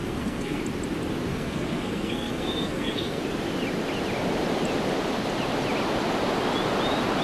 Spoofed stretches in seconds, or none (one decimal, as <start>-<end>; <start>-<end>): 0.0-0.6; 1.3-3.2